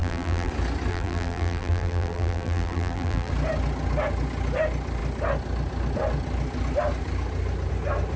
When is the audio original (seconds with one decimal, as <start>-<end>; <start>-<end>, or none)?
0.5-0.9; 3.3-8.2